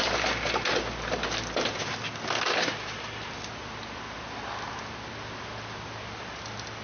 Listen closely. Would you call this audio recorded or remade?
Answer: recorded